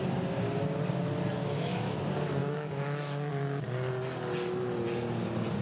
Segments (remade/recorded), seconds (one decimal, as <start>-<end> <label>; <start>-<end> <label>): 0.0-1.4 recorded; 1.4-2.0 remade; 2.0-2.4 recorded; 2.4-3.3 remade; 3.3-5.6 recorded

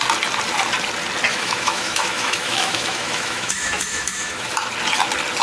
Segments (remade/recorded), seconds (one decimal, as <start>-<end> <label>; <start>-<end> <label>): 0.0-1.3 recorded; 1.3-4.5 remade; 4.5-5.4 recorded

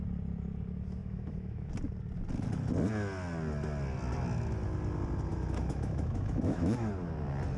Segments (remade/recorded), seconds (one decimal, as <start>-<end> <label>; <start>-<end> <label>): 0.0-1.0 recorded; 1.0-1.7 remade; 1.7-5.3 recorded; 5.3-6.9 remade; 6.9-7.6 recorded

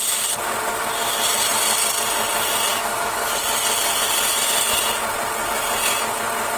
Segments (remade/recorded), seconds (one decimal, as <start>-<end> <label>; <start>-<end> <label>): 0.0-2.7 recorded; 2.7-3.3 remade; 3.3-6.6 recorded

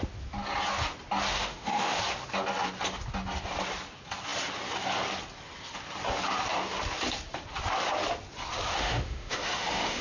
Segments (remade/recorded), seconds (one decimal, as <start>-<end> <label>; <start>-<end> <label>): 0.0-1.3 recorded; 1.3-2.0 remade; 2.0-8.7 recorded; 8.7-10.0 remade

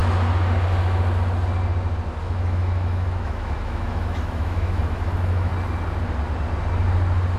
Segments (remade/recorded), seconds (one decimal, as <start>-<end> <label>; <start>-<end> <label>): 0.0-2.2 recorded; 2.2-5.5 remade; 5.5-7.4 recorded